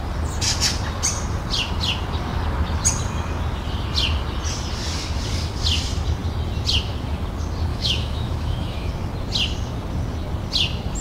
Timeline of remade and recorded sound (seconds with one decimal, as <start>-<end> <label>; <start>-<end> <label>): 0.0-7.7 recorded; 7.7-8.9 remade; 8.9-11.0 recorded